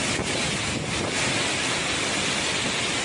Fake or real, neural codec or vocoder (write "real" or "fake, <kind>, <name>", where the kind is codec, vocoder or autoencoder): real